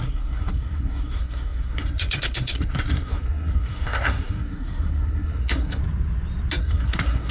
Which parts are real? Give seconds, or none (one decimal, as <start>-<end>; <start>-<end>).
5.8-6.6